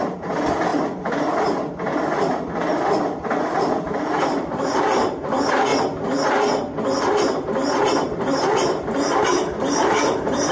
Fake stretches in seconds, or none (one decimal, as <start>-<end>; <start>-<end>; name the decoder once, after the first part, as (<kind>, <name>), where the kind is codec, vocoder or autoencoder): 0.0-5.7 (vocoder, BigVGAN v2); 7.8-10.5